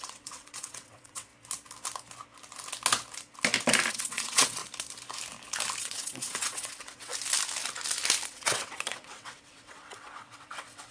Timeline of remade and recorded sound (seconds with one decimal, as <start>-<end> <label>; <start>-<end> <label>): 0.0-1.3 remade; 1.3-3.9 recorded; 3.9-4.6 remade; 4.6-5.8 recorded; 5.8-7.1 remade; 7.1-8.3 recorded; 8.3-10.9 remade